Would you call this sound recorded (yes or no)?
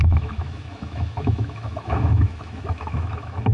no